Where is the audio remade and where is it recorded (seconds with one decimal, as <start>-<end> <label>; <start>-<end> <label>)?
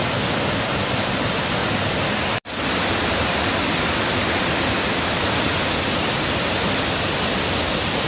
0.0-0.8 recorded; 0.8-8.1 remade